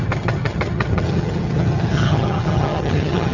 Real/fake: fake